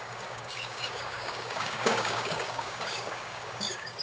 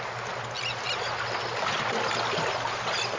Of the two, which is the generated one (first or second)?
first